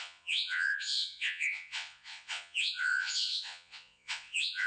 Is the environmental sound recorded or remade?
remade